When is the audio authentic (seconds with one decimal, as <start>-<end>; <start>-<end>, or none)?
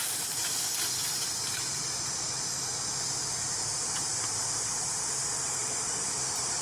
2.7-3.7